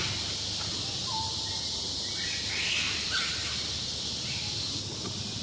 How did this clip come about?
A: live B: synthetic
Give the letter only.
A